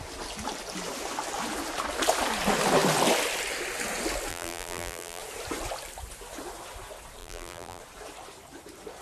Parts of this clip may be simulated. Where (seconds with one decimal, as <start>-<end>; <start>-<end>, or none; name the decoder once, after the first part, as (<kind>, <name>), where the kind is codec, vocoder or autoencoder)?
4.3-5.2 (vocoder, BigVGAN v2); 7.2-7.8